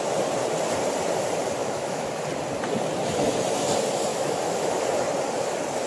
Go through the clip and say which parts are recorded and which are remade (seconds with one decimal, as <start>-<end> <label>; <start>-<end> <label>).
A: 0.0-1.6 recorded; 1.6-2.1 remade; 2.1-4.1 recorded; 4.1-4.8 remade; 4.8-5.9 recorded